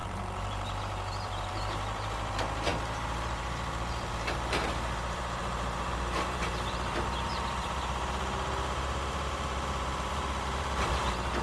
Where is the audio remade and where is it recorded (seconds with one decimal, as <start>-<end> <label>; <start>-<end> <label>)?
0.0-11.4 remade